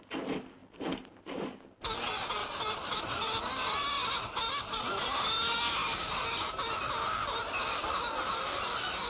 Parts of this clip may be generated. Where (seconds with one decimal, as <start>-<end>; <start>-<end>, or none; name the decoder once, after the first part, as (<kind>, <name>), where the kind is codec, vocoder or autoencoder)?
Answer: 2.4-3.0 (vocoder, BigVGAN v2)